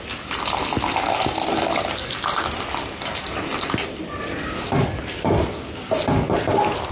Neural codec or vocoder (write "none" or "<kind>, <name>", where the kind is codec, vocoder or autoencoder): none